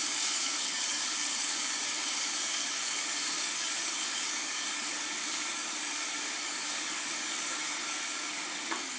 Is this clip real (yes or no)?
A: no